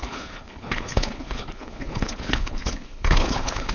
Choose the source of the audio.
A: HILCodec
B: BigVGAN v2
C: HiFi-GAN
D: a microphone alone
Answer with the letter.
A